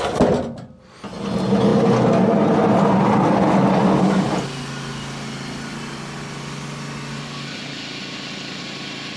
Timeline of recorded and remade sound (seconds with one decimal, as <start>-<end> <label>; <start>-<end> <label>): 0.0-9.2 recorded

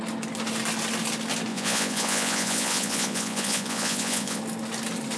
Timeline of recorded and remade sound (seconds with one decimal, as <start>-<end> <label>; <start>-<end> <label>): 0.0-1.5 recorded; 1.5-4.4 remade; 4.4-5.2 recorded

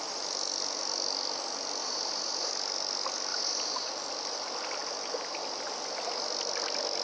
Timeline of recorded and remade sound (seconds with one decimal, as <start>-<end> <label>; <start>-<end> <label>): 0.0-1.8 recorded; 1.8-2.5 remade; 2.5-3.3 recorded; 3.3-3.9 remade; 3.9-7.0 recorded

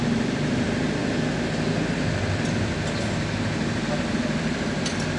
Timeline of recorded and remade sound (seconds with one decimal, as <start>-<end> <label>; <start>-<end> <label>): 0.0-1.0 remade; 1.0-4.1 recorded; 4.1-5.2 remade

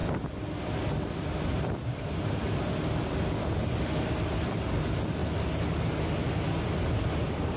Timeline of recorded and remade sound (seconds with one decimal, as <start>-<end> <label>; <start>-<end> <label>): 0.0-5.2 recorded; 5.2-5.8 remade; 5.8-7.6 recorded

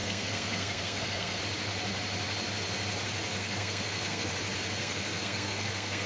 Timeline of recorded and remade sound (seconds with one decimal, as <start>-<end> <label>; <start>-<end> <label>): 0.0-1.4 remade; 1.4-3.3 recorded; 3.3-4.3 remade; 4.3-4.8 recorded; 4.8-6.1 remade

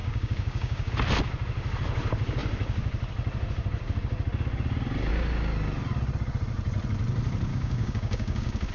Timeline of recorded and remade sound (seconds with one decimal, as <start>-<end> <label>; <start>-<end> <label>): 0.0-0.9 remade; 0.9-7.5 recorded; 7.5-8.7 remade